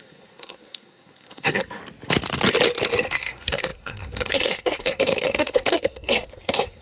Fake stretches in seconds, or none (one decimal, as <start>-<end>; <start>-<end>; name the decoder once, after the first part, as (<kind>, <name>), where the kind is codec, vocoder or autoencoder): 0.0-1.8 (codec, SNAC); 3.2-6.8

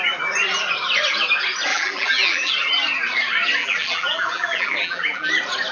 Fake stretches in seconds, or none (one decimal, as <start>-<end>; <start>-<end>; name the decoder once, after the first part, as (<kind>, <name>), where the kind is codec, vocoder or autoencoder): 1.7-2.5 (vocoder, BigVGAN v2); 3.6-5.3